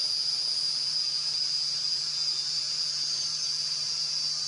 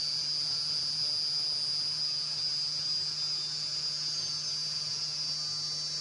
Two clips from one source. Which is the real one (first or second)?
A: second